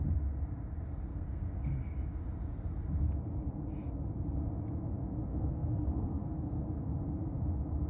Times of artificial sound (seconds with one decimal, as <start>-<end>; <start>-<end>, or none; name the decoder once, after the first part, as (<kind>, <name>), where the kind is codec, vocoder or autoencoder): 1.1-1.7 (codec, SNAC); 5.3-6.4